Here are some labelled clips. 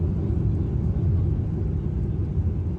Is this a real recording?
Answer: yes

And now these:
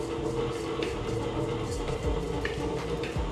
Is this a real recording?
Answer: yes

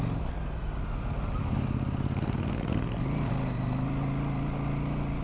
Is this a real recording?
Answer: yes